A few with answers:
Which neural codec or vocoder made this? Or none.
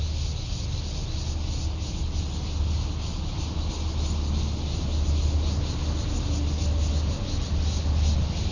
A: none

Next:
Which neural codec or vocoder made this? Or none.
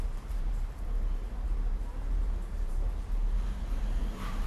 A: vocoder, BigVGAN v2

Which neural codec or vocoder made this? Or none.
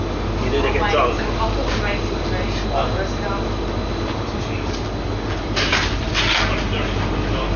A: none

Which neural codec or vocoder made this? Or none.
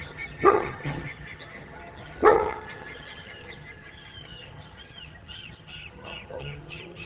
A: vocoder, HiFi-GAN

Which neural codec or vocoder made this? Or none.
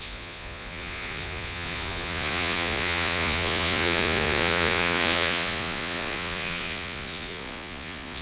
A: vocoder, Vocos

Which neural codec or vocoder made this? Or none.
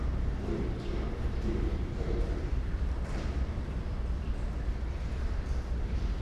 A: vocoder, BigVGAN v2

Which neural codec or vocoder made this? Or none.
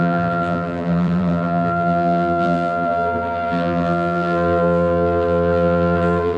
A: vocoder, BigVGAN v2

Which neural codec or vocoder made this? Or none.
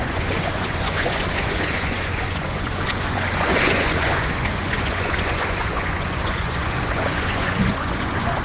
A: vocoder, Vocos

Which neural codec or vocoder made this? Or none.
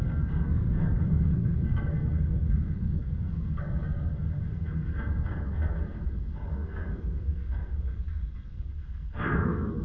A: codec, SNAC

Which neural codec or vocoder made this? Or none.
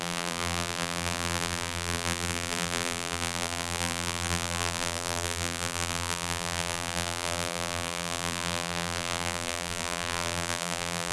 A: vocoder, BigVGAN v2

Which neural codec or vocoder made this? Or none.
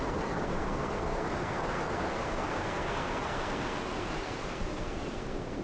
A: codec, SNAC